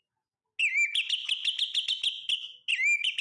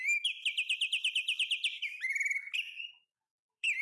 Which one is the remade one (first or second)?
second